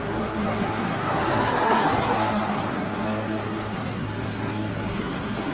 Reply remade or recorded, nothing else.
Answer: remade